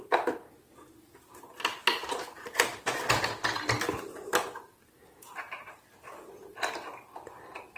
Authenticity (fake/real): real